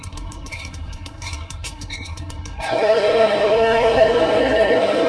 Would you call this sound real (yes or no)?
no